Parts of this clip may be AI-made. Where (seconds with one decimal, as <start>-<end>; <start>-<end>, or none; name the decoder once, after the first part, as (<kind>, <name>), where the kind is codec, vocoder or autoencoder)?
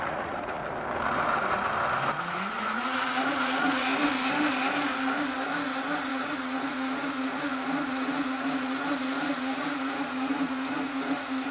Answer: 0.0-0.6 (vocoder, Vocos); 2.2-3.9; 6.1-11.5